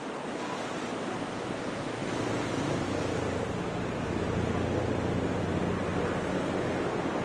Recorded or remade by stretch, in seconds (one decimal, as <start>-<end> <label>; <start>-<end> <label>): 0.0-7.2 recorded